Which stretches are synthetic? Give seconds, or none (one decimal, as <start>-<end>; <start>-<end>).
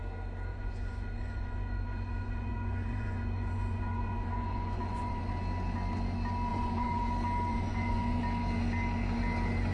0.5-5.3; 6.5-7.1; 7.5-8.2